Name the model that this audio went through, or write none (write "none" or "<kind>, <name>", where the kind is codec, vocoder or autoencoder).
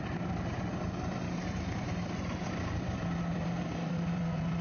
none